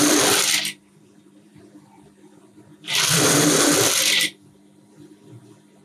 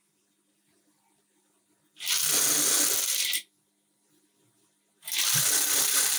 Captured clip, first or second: second